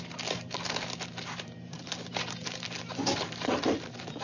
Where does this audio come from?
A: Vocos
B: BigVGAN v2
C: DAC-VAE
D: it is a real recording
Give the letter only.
B